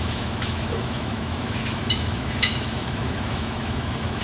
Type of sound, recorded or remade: remade